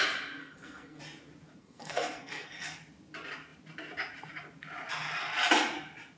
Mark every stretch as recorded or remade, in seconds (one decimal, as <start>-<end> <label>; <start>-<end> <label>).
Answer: 0.0-0.4 recorded; 0.4-1.0 remade; 1.0-1.6 recorded; 1.6-2.8 remade; 2.8-6.2 recorded